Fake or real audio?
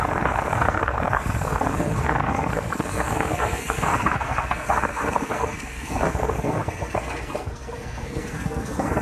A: fake